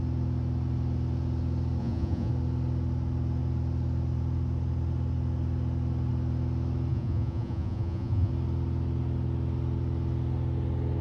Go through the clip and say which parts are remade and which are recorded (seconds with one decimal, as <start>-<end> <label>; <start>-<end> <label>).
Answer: 0.0-1.8 recorded; 1.8-2.3 remade; 2.3-6.9 recorded; 6.9-8.3 remade; 8.3-11.0 recorded

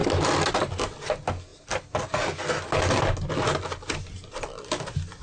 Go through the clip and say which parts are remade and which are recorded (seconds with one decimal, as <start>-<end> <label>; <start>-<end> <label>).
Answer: 0.0-5.2 recorded

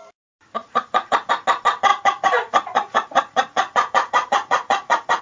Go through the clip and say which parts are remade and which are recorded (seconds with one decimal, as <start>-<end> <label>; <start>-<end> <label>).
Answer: 0.0-0.6 recorded; 0.6-1.3 remade; 1.3-1.9 recorded; 1.9-5.2 remade